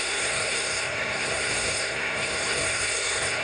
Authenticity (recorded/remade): remade